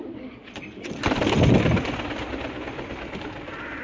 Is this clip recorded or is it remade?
recorded